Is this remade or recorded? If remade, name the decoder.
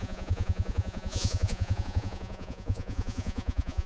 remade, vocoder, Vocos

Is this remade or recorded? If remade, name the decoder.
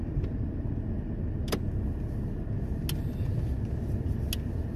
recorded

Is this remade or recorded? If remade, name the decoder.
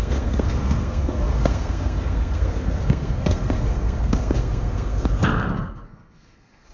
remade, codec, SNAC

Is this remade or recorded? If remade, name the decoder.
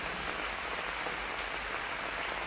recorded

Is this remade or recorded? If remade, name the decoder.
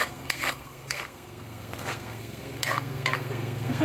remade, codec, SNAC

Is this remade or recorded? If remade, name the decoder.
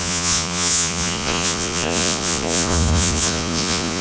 remade, vocoder, Vocos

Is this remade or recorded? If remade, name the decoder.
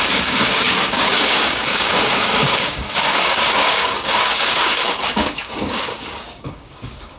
remade, codec, DAC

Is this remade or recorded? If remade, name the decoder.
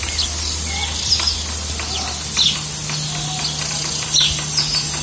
recorded